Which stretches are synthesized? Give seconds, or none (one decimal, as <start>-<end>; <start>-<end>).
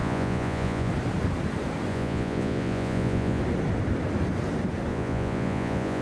0.0-0.9; 1.9-3.4; 4.9-6.0